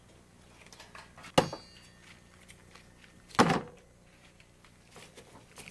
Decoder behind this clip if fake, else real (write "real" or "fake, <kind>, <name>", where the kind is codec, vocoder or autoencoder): real